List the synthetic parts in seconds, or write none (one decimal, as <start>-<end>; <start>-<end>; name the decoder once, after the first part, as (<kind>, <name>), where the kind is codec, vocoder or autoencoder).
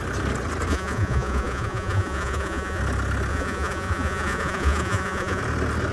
0.7-2.8 (vocoder, Vocos); 3.3-5.4